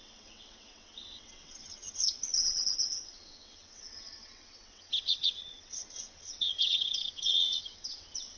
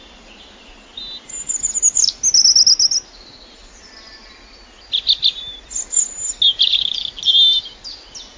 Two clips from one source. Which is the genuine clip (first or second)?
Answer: second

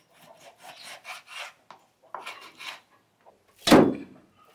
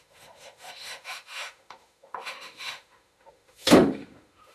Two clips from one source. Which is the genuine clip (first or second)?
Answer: first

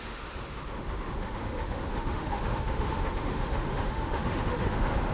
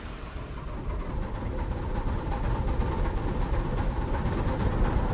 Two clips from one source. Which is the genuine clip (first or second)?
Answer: second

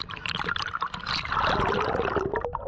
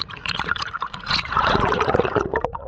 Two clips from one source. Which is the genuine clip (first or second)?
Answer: first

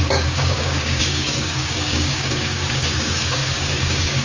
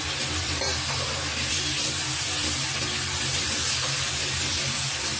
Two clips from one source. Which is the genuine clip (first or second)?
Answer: second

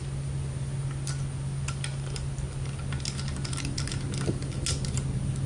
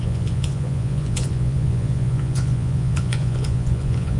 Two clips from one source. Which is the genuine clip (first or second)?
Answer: first